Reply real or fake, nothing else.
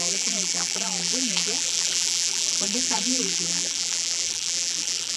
fake